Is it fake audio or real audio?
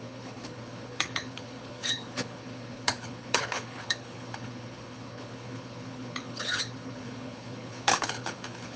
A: fake